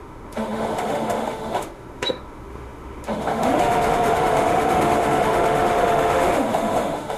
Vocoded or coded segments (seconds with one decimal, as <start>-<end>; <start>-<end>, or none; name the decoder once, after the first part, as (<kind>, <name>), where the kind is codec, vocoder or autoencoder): 0.0-7.2 (autoencoder, DAC-VAE)